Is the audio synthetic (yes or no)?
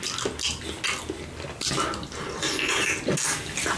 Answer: no